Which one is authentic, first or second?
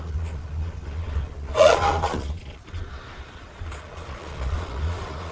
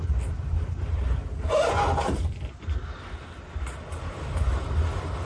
second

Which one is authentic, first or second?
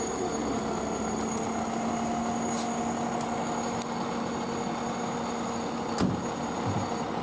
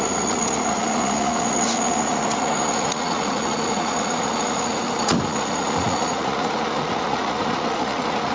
first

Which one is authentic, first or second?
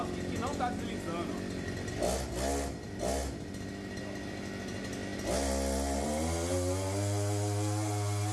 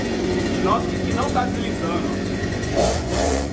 first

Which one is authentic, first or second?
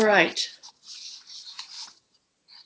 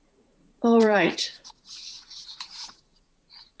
first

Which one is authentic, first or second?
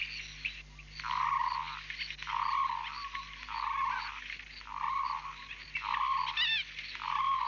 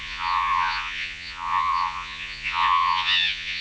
first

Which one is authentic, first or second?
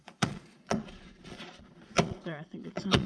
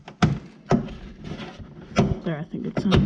second